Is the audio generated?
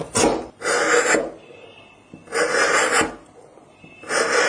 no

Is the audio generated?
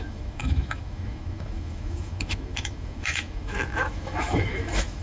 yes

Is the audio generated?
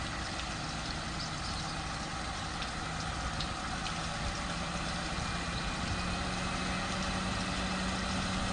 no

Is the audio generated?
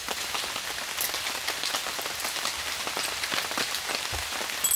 no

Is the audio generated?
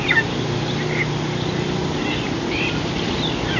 no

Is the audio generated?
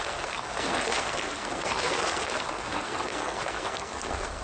yes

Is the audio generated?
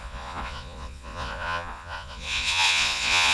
yes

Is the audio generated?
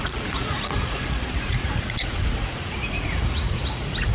yes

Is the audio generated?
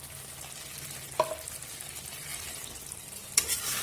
no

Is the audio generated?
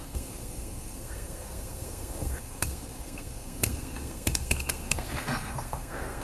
yes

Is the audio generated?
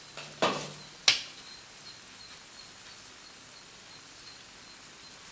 no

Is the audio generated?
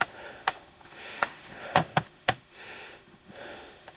yes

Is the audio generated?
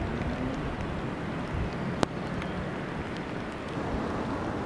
no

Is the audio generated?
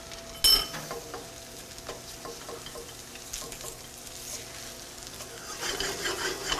no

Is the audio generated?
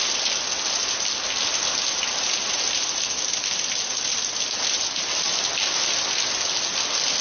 no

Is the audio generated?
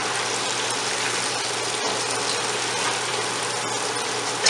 no